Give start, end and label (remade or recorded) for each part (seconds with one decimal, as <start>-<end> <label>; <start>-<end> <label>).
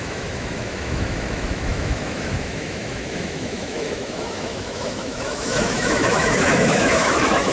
0.0-7.5 remade